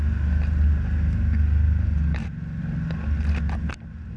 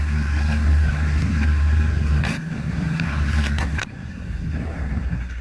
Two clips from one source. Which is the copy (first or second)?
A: second